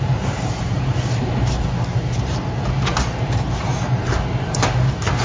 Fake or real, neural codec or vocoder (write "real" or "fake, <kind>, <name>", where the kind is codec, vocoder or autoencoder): fake, vocoder, BigVGAN v2